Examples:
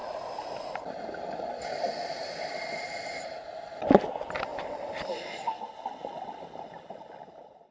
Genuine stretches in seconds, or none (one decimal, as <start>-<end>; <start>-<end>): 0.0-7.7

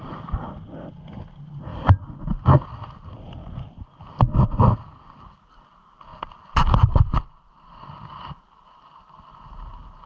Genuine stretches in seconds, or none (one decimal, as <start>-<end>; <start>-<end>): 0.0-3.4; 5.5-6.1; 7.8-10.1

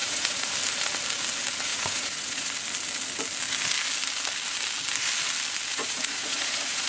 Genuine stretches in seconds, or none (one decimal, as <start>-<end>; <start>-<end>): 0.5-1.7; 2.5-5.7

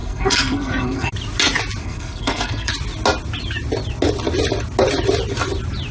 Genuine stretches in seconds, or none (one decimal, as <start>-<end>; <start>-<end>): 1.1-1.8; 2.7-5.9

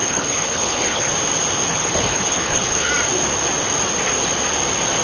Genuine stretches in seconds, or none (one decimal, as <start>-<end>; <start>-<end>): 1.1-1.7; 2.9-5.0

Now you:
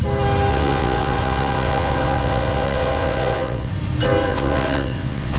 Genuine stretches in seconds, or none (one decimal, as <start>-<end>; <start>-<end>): 0.0-0.5; 3.7-4.3

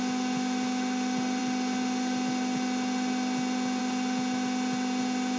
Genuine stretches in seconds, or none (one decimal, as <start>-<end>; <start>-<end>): 0.0-5.4